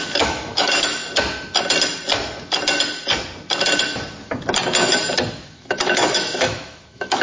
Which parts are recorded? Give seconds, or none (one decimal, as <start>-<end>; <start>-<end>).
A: 1.0-5.3

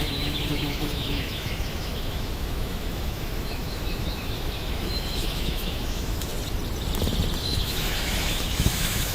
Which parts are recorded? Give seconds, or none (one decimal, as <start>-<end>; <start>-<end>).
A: 6.3-7.4